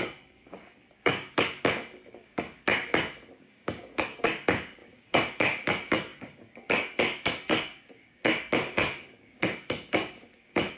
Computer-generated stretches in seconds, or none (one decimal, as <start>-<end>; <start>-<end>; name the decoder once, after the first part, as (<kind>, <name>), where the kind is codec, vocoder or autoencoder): 0.0-10.8 (codec, DAC)